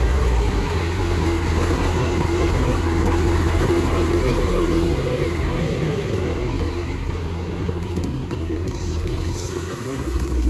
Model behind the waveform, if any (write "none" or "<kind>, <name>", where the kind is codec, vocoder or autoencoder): codec, SNAC